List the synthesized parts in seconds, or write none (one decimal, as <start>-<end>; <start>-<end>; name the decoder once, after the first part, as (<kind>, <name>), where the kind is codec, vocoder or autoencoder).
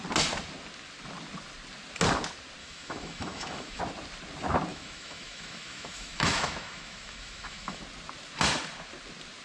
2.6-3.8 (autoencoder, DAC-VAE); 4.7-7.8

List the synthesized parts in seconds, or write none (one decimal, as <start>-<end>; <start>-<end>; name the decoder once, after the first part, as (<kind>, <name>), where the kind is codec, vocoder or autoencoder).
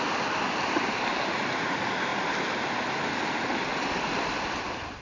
none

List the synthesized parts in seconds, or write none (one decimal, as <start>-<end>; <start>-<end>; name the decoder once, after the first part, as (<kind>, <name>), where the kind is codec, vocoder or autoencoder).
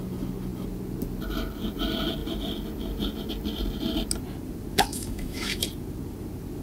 4.9-5.6 (autoencoder, DAC-VAE)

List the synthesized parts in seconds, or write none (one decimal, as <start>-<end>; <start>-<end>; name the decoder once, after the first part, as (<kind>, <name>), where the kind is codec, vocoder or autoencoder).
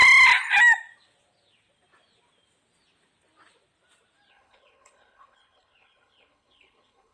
4.3-7.1 (codec, HILCodec)